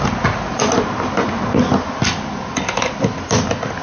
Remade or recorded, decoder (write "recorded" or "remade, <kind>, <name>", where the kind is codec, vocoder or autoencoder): recorded